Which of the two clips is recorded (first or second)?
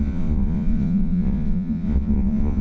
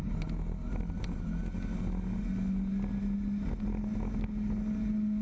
second